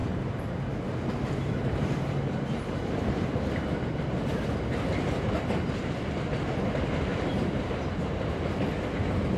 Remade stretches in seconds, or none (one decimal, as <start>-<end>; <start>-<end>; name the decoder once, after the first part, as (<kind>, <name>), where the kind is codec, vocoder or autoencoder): 0.0-3.7 (vocoder, BigVGAN v2); 7.1-8.3